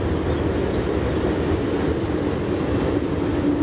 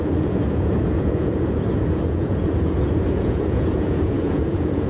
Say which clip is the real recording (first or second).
first